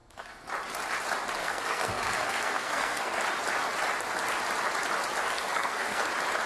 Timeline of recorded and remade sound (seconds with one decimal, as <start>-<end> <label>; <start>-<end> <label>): 0.0-0.5 remade; 0.5-1.4 recorded; 1.4-3.2 remade; 3.2-5.2 recorded; 5.2-6.1 remade; 6.1-6.5 recorded